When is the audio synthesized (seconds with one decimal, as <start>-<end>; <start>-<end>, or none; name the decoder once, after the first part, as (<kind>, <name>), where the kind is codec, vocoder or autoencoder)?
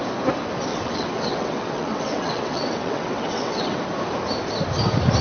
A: 0.7-3.8 (vocoder, WaveNeXt)